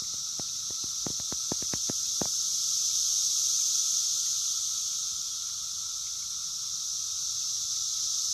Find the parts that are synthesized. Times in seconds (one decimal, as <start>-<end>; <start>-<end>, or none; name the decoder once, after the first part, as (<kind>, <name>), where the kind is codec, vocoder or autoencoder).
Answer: none